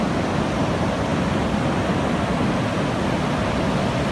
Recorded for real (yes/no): yes